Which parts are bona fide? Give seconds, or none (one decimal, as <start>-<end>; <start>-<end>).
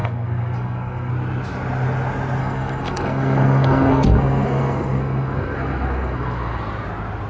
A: 1.1-2.4; 6.6-7.3